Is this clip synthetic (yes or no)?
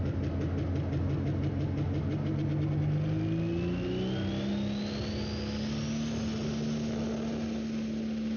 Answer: no